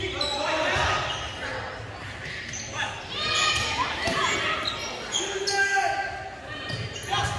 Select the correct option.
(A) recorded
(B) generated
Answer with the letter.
A